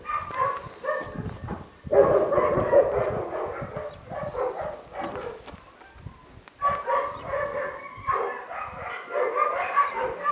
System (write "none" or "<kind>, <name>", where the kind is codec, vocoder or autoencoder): none